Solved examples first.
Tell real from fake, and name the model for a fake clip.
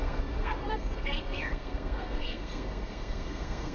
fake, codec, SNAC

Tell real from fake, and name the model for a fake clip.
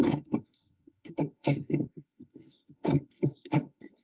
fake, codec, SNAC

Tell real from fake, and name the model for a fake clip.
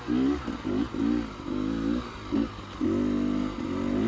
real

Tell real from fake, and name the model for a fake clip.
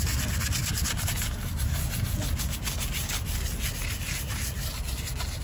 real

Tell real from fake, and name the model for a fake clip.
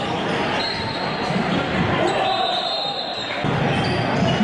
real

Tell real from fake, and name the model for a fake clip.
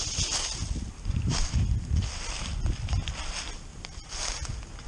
real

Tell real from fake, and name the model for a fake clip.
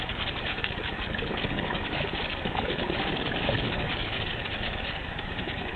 fake, codec, DAC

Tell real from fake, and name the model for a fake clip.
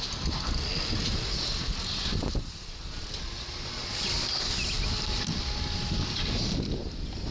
real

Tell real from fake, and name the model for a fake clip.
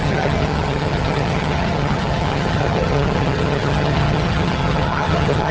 fake, vocoder, HiFi-GAN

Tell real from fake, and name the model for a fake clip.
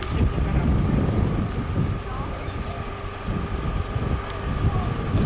real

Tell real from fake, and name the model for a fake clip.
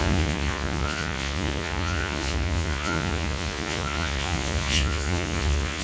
fake, vocoder, Vocos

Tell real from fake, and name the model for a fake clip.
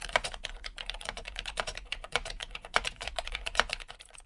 fake, vocoder, Vocos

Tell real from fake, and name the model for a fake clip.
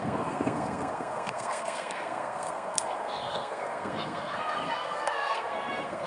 fake, codec, SNAC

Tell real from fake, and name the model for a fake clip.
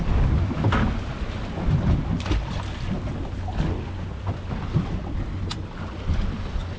real